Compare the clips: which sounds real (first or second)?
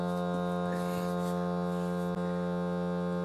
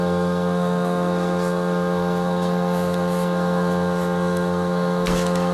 first